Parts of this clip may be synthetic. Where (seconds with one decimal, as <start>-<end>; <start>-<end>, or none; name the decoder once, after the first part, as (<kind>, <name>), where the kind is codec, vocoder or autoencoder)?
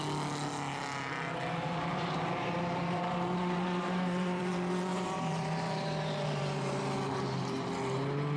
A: 1.9-4.4 (vocoder, BigVGAN v2); 4.9-6.8